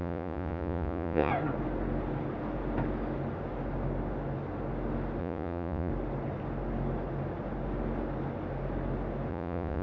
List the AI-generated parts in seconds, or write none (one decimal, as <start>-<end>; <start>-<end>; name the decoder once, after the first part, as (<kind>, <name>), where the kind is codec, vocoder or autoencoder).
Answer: 0.0-1.3 (vocoder, Vocos); 5.2-5.9; 9.3-9.8